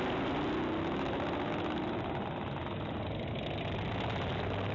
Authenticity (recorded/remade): recorded